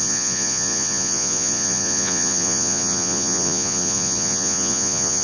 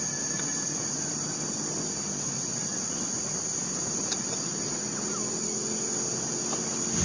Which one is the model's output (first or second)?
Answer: first